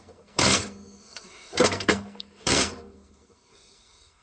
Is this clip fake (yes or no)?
yes